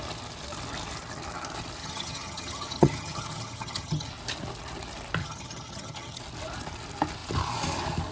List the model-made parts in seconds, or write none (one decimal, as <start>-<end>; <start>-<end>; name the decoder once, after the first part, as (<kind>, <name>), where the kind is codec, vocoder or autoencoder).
1.8-4.1 (vocoder, HiFi-GAN); 5.2-6.2